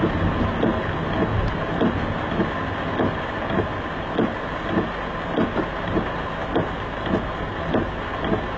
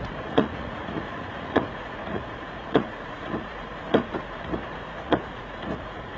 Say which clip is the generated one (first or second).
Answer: second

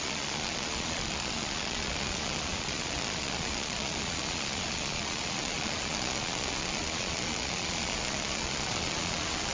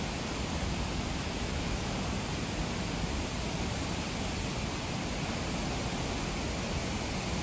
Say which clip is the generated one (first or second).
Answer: first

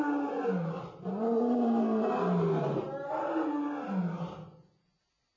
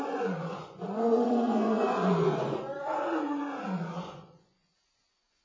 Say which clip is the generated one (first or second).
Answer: second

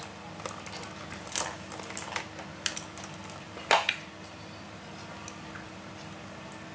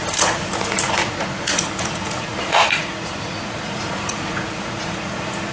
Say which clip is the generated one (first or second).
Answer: second